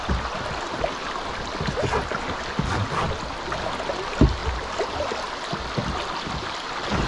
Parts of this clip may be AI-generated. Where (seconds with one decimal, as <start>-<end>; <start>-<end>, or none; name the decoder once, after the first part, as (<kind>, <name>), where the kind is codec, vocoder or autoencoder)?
none